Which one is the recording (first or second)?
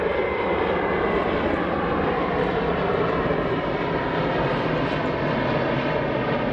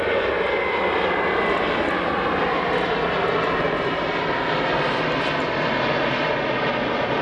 second